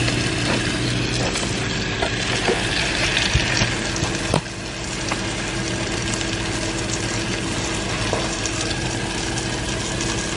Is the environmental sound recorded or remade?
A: recorded